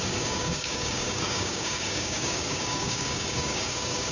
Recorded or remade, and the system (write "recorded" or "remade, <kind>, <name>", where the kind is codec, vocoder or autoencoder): remade, codec, DAC